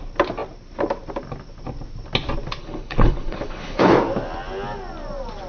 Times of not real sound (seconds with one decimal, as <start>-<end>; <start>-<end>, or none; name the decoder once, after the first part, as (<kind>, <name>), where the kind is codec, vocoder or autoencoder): 2.6-3.9 (codec, HILCodec)